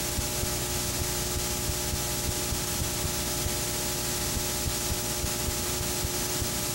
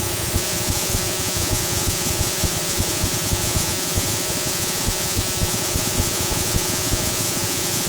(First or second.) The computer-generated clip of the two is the second